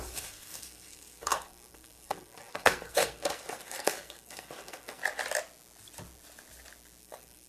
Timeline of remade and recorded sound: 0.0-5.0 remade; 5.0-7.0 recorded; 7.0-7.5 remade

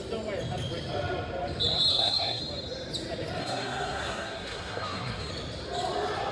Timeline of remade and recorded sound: 0.0-1.9 recorded; 1.9-2.4 remade; 2.4-3.4 recorded; 3.4-5.3 remade; 5.3-6.3 recorded

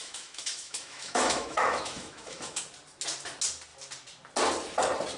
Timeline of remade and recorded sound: 0.0-2.6 remade; 2.6-5.2 recorded